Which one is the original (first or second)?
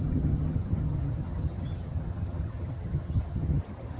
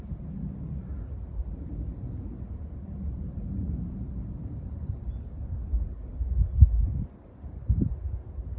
second